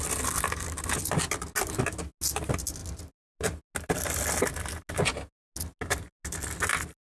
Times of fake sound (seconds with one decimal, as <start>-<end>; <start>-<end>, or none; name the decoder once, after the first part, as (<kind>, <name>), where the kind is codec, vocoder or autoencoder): none